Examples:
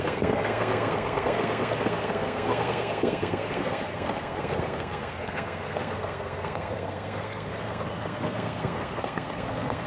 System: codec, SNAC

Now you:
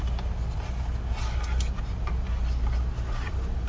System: none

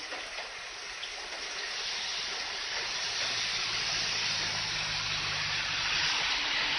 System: none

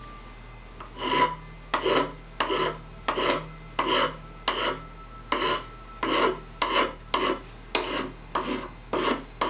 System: none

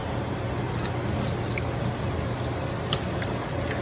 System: none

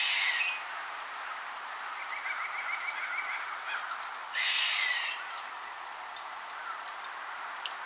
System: none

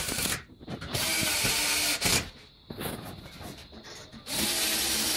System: none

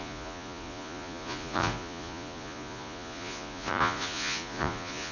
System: vocoder, Vocos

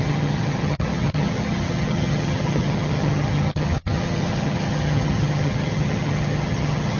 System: vocoder, HiFi-GAN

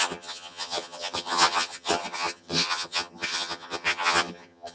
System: vocoder, HiFi-GAN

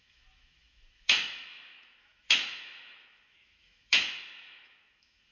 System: autoencoder, DAC-VAE